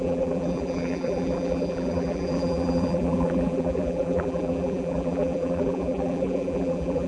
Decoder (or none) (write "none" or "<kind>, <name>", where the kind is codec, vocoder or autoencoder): vocoder, BigVGAN v2